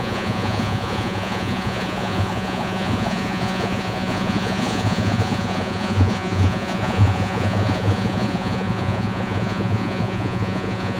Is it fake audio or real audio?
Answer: fake